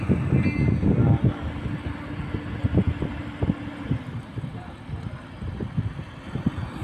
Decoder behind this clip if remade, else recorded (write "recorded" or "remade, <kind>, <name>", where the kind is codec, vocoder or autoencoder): recorded